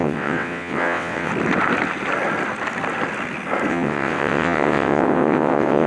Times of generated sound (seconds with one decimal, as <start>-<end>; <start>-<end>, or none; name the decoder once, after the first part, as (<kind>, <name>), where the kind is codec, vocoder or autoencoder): 0.0-1.3 (vocoder, WaveNeXt); 3.7-5.9